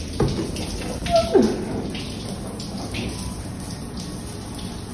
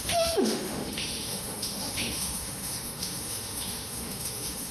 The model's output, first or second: second